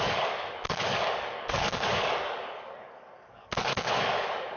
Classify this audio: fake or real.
fake